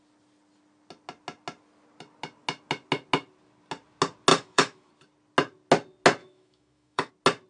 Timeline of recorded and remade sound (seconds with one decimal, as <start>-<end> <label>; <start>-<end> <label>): 0.0-4.3 recorded; 4.3-4.9 remade; 4.9-6.2 recorded; 6.2-7.1 remade; 7.1-7.5 recorded